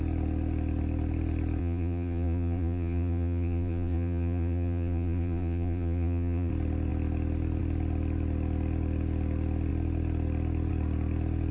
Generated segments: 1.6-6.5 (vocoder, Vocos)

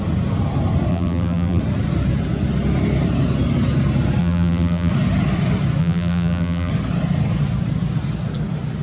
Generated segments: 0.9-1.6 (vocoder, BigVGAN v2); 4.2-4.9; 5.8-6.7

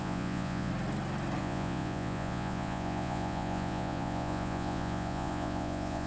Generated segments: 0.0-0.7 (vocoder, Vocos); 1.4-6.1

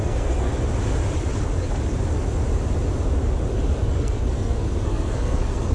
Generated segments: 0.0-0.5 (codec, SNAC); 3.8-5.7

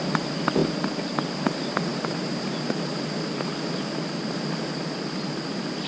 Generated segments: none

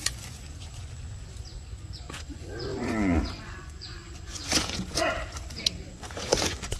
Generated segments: 0.0-6.8 (vocoder, Vocos)